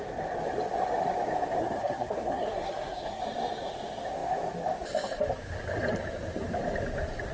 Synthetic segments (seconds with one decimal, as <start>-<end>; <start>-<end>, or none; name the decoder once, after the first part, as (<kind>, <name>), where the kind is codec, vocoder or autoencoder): 1.6-3.2 (codec, SNAC)